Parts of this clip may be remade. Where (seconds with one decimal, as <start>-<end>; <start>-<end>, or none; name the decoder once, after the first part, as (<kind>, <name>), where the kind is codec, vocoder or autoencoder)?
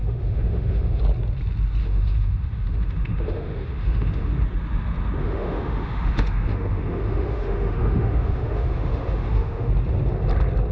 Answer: 0.0-1.0 (autoencoder, DAC-VAE); 1.8-4.3; 5.2-9.7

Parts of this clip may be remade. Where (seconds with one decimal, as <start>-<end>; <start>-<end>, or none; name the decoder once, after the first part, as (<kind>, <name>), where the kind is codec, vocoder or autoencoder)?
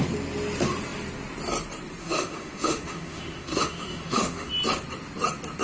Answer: 2.0-4.5 (autoencoder, DAC-VAE)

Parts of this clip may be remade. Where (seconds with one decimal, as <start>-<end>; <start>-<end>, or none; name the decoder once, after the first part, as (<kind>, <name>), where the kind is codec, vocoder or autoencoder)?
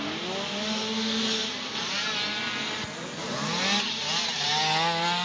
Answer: none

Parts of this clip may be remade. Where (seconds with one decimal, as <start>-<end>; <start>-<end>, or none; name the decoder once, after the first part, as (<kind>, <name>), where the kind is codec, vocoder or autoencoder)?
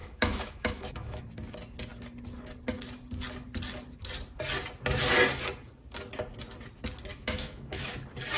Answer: 0.0-1.2 (autoencoder, DAC-VAE); 7.1-7.9